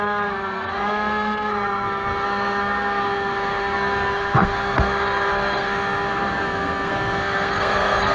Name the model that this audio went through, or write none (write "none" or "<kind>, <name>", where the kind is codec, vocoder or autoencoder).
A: codec, SNAC